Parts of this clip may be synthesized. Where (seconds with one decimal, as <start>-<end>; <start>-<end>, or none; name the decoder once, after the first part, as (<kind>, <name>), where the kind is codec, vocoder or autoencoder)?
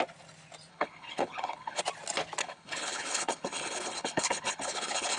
0.7-1.8 (codec, HILCodec); 2.4-5.2